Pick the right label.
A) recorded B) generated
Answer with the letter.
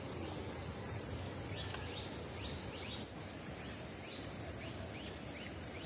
A